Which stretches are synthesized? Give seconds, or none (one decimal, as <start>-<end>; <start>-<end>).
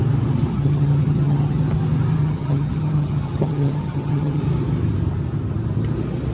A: 0.5-1.6; 2.2-4.4